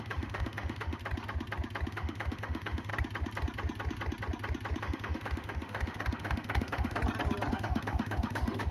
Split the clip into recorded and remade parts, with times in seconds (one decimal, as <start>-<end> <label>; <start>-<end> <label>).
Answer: 0.0-1.0 remade; 1.0-1.9 recorded; 1.9-2.9 remade; 2.9-4.8 recorded; 4.8-7.0 remade; 7.0-7.5 recorded; 7.5-8.7 remade